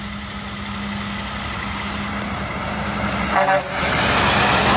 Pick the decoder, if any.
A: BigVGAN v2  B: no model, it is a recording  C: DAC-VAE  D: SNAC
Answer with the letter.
B